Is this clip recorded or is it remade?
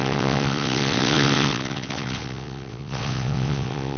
remade